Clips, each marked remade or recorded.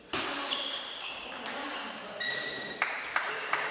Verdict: remade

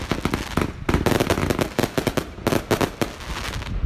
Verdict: recorded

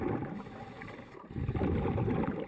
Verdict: recorded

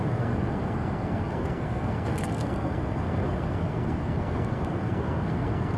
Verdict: remade